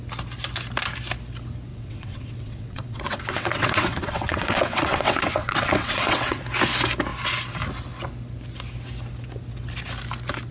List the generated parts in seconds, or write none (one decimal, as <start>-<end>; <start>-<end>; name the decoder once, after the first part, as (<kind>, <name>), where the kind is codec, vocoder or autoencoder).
1.7-6.4 (vocoder, WaveNeXt)